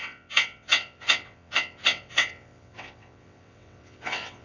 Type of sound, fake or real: fake